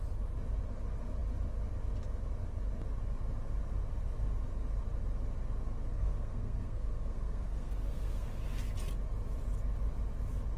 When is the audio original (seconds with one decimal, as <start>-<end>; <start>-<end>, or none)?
0.0-5.9; 8.3-10.6